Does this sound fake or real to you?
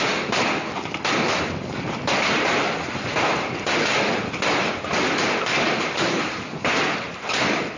real